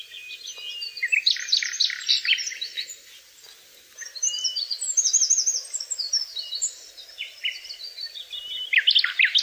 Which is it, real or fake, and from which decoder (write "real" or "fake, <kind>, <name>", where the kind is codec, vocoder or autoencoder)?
real